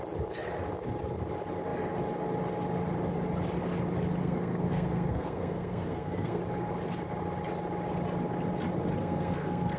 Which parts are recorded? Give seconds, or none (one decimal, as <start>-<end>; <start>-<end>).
0.0-4.2; 6.4-9.0